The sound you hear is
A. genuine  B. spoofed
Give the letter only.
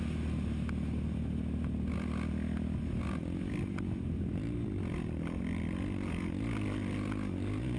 A